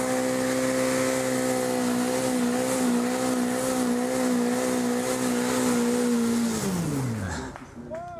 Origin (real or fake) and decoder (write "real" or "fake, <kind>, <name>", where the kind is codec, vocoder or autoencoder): real